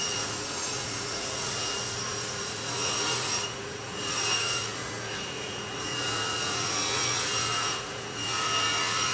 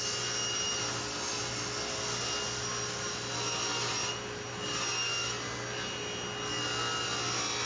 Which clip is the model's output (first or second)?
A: first